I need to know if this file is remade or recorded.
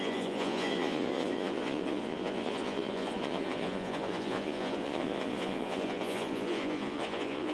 remade